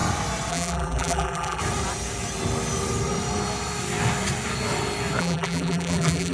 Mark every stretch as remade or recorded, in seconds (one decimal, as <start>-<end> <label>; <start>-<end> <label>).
0.0-0.5 recorded; 0.5-1.6 remade; 1.6-5.2 recorded; 5.2-6.3 remade